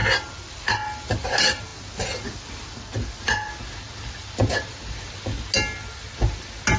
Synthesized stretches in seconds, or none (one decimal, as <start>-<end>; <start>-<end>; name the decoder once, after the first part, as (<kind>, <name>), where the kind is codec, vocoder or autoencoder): none